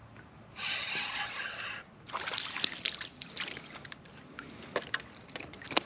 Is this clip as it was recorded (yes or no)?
yes